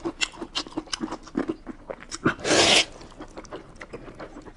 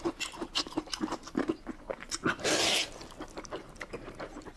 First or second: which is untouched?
first